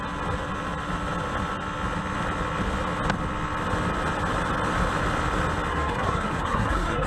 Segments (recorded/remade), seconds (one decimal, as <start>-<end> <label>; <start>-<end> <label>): 0.0-5.7 recorded; 5.7-7.1 remade